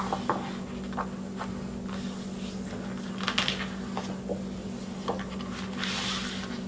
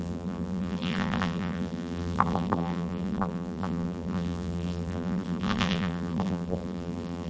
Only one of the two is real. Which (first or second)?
first